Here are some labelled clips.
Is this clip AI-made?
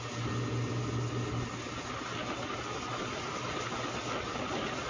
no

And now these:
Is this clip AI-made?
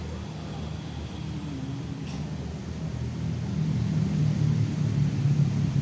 no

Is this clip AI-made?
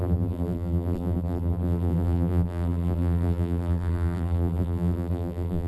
yes